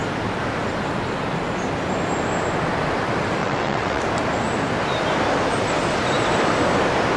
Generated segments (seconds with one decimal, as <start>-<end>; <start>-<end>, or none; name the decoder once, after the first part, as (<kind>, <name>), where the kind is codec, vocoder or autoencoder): 3.4-4.0 (vocoder, WaveNeXt)